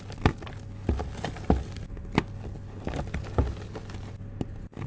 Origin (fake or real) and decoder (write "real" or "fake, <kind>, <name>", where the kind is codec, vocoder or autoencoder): real